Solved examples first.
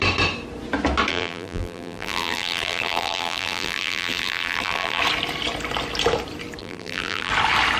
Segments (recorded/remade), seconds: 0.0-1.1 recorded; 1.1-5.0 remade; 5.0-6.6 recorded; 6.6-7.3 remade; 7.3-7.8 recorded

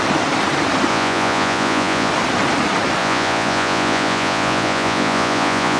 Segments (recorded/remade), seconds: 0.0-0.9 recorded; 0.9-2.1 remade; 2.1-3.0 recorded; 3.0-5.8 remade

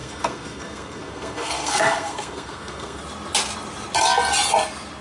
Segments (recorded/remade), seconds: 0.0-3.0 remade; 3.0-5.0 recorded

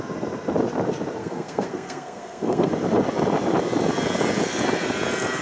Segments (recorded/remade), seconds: 0.0-1.2 recorded; 1.2-2.7 remade; 2.7-5.4 recorded

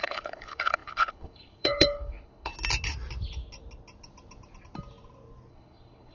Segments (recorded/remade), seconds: 0.0-2.5 remade; 2.5-5.5 recorded; 5.5-6.1 remade